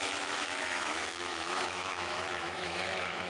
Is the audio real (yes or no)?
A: no